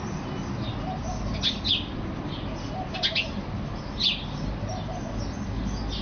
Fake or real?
real